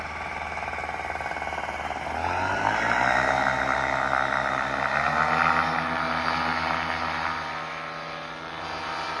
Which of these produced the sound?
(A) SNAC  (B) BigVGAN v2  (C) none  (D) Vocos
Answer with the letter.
C